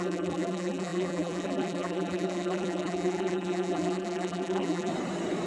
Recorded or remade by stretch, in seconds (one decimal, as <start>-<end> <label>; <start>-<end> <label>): 0.0-4.9 remade; 4.9-5.5 recorded

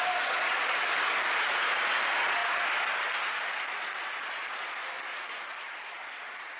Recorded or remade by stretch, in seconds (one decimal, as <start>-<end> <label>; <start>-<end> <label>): 0.0-6.6 recorded